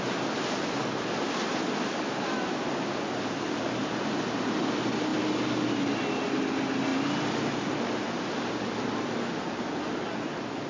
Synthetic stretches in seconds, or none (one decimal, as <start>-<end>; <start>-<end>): none

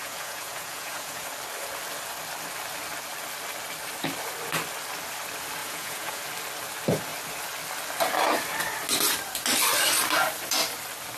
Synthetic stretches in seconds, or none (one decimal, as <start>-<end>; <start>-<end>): 0.0-1.3; 5.6-6.2

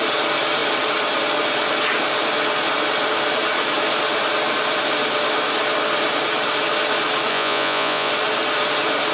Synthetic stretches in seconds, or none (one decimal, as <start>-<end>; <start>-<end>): 7.3-8.1

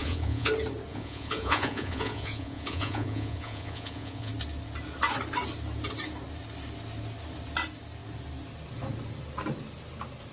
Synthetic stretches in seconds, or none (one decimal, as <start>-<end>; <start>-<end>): 0.0-0.5; 0.9-4.3

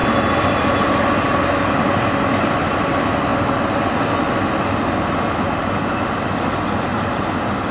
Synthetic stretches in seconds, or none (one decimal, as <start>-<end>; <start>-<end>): none

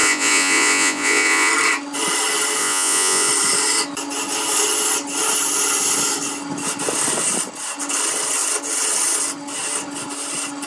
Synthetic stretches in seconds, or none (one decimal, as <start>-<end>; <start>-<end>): 0.0-1.5; 2.6-3.3